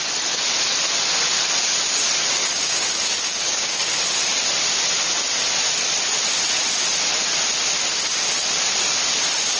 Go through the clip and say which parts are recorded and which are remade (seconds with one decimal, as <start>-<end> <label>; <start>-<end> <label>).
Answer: 0.0-2.4 recorded; 2.4-3.9 remade; 3.9-9.6 recorded